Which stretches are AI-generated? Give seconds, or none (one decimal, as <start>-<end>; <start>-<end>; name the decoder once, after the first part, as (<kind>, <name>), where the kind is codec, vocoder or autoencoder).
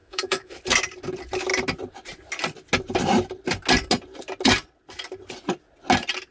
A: 0.0-0.6 (autoencoder, DAC-VAE)